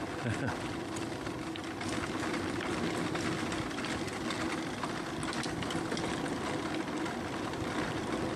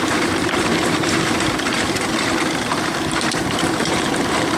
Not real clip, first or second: second